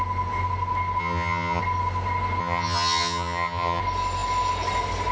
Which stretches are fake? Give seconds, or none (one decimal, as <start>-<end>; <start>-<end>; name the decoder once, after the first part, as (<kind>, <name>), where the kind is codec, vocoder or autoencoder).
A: 1.0-1.6 (vocoder, HiFi-GAN); 2.4-3.8